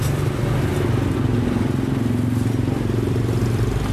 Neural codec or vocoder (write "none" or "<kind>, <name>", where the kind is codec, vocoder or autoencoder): none